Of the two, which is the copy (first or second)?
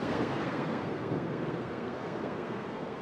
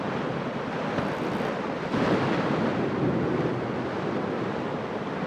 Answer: first